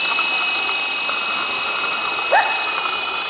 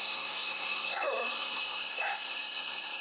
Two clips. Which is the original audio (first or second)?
first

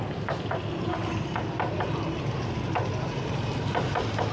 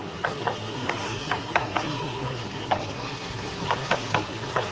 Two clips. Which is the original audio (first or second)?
first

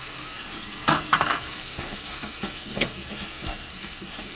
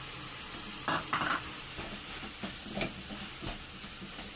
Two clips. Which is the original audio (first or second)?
second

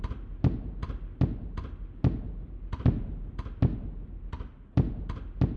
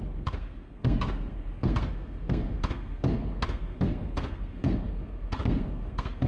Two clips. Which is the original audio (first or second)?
first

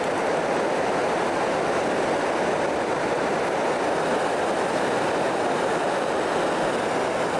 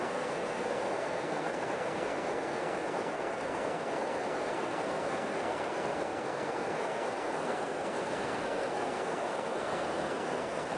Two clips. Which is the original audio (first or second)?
first